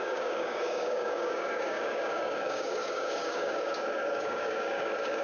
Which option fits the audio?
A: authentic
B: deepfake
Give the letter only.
B